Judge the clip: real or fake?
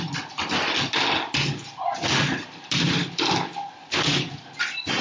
real